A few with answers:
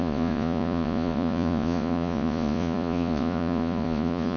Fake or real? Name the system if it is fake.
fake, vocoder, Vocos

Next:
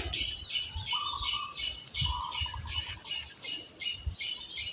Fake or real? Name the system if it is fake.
real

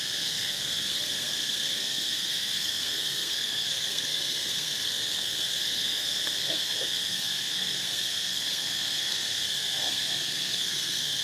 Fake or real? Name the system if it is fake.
fake, codec, SNAC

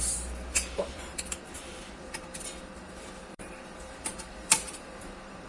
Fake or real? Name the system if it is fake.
fake, vocoder, BigVGAN v2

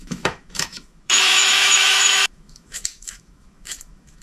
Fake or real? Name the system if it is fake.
fake, autoencoder, DAC-VAE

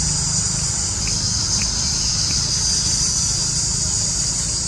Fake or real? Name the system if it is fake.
real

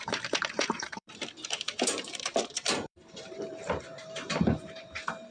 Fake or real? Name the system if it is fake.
fake, vocoder, BigVGAN v2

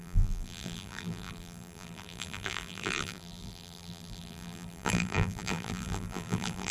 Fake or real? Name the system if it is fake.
fake, vocoder, BigVGAN v2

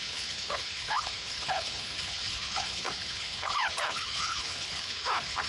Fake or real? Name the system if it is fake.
fake, codec, HILCodec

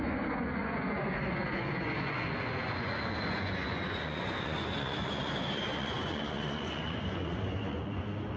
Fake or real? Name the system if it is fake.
fake, vocoder, Vocos